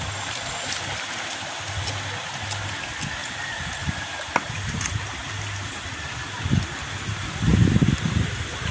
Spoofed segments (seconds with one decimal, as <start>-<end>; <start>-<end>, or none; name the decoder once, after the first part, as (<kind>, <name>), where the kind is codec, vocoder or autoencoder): 3.2-5.3 (vocoder, BigVGAN v2); 7.5-8.2